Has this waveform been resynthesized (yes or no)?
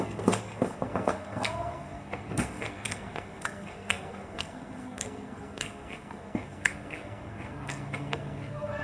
yes